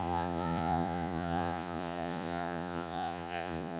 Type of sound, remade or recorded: remade